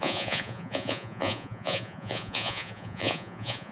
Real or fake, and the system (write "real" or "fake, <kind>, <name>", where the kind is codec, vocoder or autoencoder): fake, vocoder, Vocos